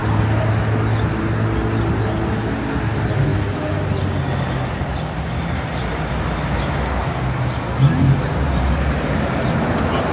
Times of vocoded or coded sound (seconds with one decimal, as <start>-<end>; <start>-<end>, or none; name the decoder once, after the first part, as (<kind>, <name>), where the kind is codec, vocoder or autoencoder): none